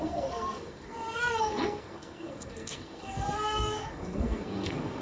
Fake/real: fake